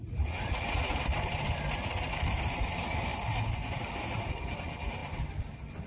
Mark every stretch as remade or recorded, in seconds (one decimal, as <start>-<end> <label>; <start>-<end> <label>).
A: 0.0-0.9 remade; 0.9-5.9 recorded